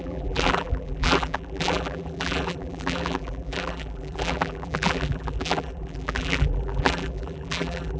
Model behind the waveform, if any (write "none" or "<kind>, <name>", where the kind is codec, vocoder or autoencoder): vocoder, BigVGAN v2